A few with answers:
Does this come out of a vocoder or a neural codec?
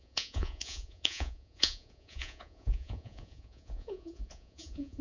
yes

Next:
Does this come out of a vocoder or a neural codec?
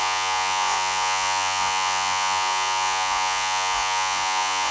yes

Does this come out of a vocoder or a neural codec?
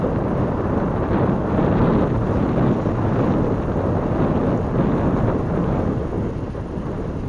no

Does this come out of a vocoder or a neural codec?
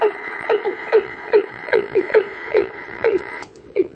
yes